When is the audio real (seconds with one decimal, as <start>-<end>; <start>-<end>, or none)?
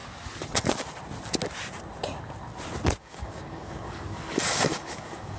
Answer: 0.0-3.0